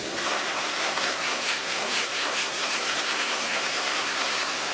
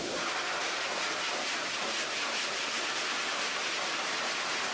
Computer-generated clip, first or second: first